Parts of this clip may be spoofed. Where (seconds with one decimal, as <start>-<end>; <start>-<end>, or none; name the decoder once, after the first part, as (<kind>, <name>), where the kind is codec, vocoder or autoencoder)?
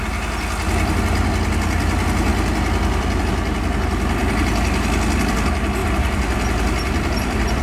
2.3-3.2 (vocoder, BigVGAN v2); 5.8-7.6